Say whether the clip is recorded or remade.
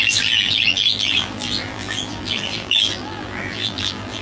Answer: remade